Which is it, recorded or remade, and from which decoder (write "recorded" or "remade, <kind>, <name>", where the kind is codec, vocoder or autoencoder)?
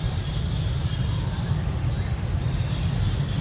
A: remade, vocoder, BigVGAN v2